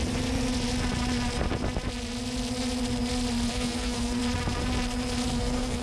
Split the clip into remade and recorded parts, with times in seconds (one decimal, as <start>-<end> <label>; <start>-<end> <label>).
0.0-3.5 recorded; 3.5-4.2 remade; 4.2-5.3 recorded; 5.3-5.8 remade